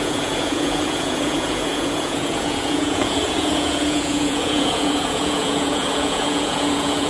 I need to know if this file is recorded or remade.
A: remade